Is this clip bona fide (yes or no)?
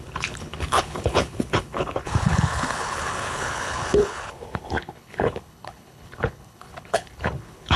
no